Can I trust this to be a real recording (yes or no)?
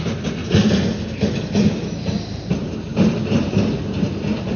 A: yes